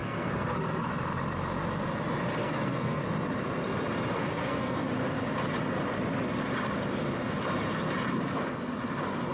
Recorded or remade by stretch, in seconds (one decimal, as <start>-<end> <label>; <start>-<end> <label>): 0.0-0.6 remade; 0.6-2.4 recorded; 2.4-3.0 remade; 3.0-4.2 recorded; 4.2-4.9 remade; 4.9-9.3 recorded